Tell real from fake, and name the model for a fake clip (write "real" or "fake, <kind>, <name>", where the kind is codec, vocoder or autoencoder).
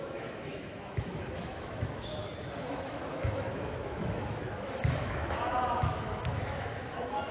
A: fake, autoencoder, DAC-VAE